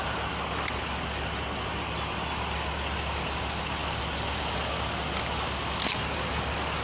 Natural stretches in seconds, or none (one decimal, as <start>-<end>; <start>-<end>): 0.0-6.8